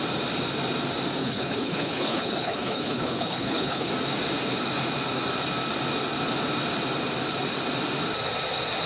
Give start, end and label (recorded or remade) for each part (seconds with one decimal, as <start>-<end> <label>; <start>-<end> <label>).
0.0-1.2 recorded; 1.2-3.9 remade; 3.9-8.9 recorded